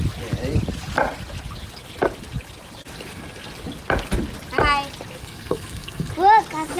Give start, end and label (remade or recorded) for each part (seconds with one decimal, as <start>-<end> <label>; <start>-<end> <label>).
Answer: 0.0-5.2 recorded; 5.2-6.1 remade; 6.1-6.8 recorded